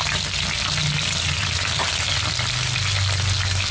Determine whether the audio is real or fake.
real